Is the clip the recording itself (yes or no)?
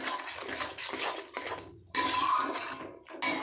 yes